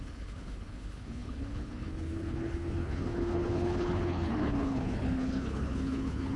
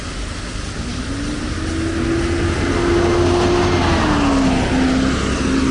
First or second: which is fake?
first